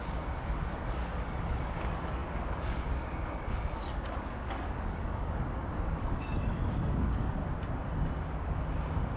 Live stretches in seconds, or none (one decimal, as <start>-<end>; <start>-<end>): 7.4-9.2